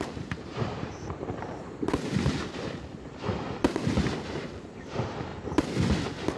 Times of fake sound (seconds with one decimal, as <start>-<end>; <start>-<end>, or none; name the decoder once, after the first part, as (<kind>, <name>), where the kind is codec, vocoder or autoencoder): 0.0-2.4 (vocoder, BigVGAN v2); 4.3-5.3